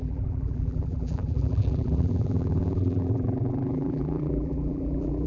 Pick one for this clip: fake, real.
fake